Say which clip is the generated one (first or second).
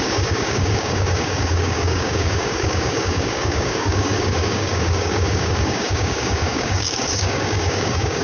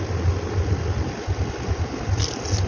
first